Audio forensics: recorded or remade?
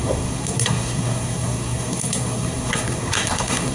remade